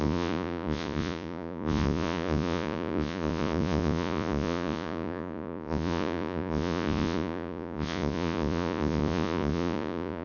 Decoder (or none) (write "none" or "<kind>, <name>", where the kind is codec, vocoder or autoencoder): vocoder, Vocos